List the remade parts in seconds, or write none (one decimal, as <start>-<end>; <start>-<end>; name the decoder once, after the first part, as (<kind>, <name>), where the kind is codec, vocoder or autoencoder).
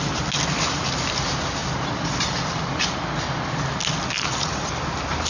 none